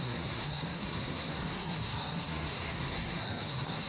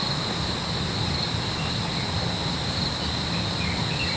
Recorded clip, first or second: second